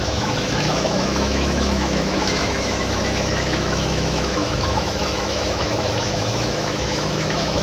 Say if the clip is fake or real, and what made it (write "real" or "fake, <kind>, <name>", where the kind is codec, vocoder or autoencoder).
fake, autoencoder, DAC-VAE